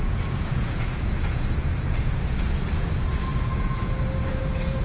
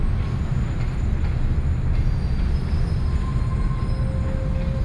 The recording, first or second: second